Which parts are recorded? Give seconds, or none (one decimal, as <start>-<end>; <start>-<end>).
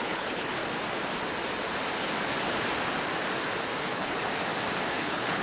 0.6-3.8; 4.2-4.9